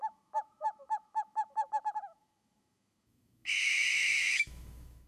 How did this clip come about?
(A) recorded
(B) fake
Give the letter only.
B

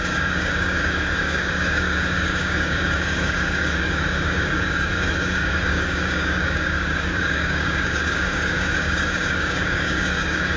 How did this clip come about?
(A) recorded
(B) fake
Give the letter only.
B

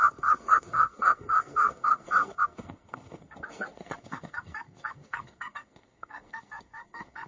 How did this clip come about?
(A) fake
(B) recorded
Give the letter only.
A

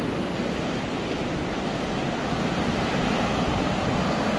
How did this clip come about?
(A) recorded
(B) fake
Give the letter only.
A